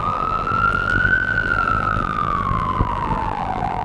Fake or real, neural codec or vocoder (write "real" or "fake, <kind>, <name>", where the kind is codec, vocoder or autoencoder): fake, vocoder, BigVGAN v2